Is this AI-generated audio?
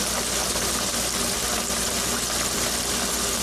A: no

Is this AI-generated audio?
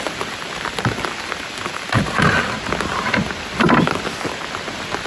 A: no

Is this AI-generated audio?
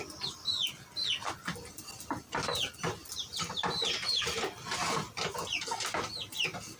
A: no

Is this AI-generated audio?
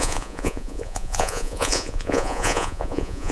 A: yes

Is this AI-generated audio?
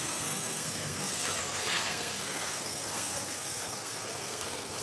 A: yes